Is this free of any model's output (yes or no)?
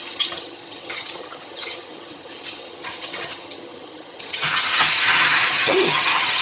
no